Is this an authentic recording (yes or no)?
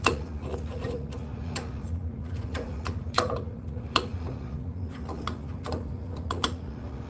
no